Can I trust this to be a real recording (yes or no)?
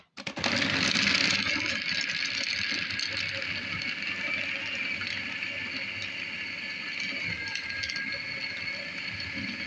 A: yes